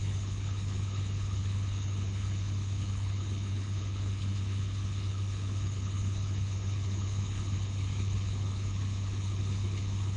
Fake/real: fake